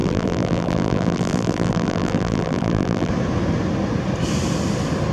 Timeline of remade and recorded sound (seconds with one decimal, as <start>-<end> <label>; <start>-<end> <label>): 0.0-3.1 remade; 3.1-5.1 recorded